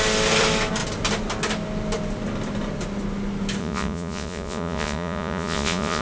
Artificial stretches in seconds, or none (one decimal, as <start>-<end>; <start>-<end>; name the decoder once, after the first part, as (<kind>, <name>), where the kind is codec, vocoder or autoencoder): 3.6-6.0 (vocoder, Vocos)

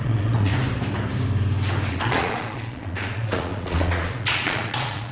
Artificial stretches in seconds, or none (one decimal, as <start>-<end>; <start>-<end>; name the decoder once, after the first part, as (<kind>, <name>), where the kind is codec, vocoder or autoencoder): 0.0-0.5 (vocoder, Vocos); 1.9-5.1

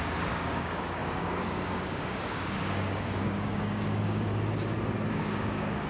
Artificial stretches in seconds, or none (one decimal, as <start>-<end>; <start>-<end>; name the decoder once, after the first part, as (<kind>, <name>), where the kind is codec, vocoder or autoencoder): 0.0-4.3 (codec, DAC); 5.1-5.9